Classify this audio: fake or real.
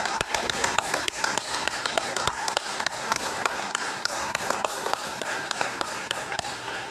fake